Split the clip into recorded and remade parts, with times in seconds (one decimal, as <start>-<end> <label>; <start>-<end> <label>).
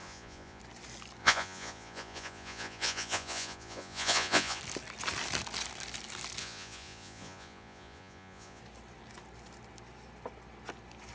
0.0-0.6 remade; 0.6-1.2 recorded; 1.2-4.6 remade; 4.6-6.4 recorded; 6.4-8.6 remade; 8.6-11.1 recorded